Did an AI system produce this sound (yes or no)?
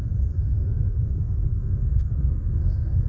yes